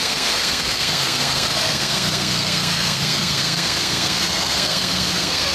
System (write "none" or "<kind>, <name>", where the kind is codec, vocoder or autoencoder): codec, SNAC